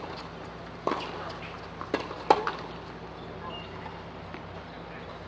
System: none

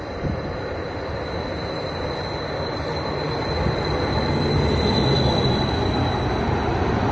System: none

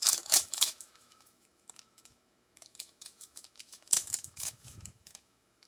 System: autoencoder, DAC-VAE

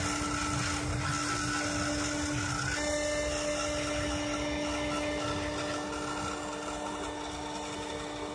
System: none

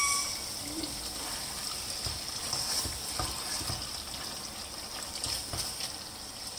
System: vocoder, BigVGAN v2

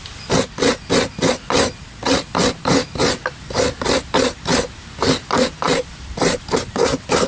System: none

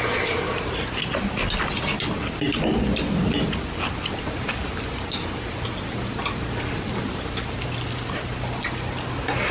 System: none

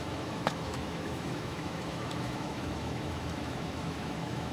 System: autoencoder, DAC-VAE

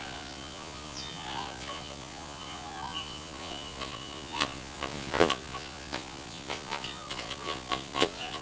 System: vocoder, Vocos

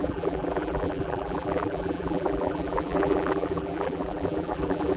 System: vocoder, BigVGAN v2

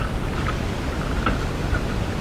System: none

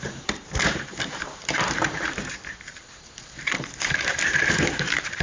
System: vocoder, BigVGAN v2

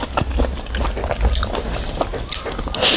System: none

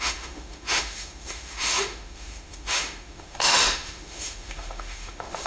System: autoencoder, DAC-VAE